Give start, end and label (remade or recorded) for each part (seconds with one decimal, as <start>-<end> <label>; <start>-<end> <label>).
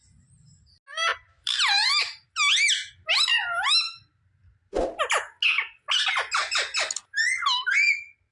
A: 0.0-1.1 recorded; 1.1-2.3 remade; 2.3-8.3 recorded